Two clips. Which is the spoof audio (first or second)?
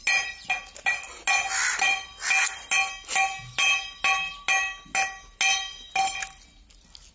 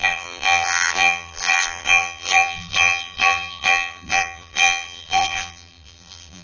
second